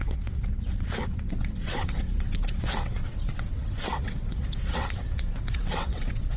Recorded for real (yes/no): no